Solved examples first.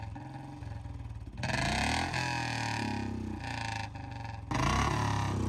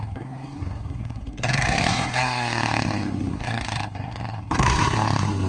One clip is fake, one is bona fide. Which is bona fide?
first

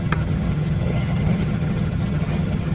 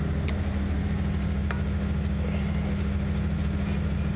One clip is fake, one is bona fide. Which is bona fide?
second